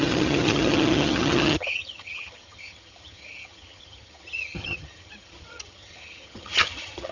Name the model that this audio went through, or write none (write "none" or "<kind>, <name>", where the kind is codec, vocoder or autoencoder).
vocoder, HiFi-GAN